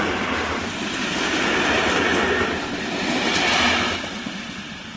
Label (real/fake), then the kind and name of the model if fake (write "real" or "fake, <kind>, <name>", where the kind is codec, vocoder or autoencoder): real